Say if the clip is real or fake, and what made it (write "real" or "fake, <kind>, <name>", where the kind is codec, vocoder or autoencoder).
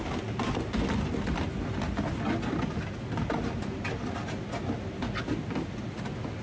real